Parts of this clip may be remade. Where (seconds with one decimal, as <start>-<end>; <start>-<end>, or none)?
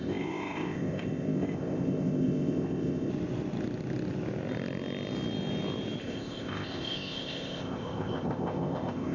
0.0-3.1; 6.0-9.1